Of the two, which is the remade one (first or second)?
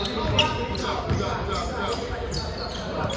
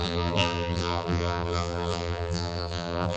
second